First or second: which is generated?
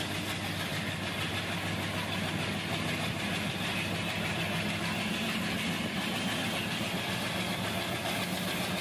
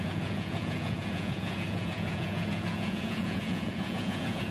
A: second